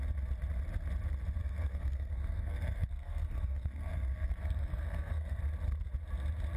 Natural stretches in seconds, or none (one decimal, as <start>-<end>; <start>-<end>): 0.0-1.4; 5.4-6.6